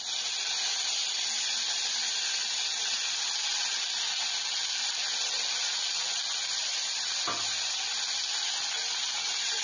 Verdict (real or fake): real